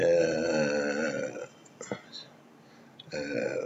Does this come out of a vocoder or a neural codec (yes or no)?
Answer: no